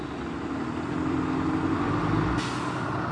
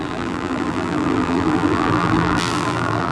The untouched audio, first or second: first